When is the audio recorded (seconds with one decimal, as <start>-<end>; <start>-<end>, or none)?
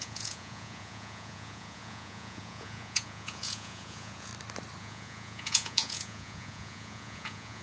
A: 4.3-4.8